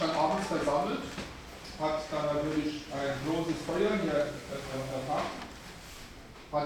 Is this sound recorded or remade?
recorded